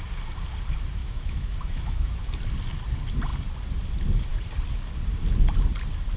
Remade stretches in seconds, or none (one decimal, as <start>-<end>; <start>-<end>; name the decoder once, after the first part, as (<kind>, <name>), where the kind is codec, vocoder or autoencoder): 1.0-2.2 (autoencoder, DAC-VAE)